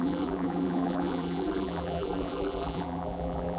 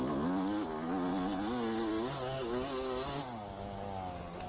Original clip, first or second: second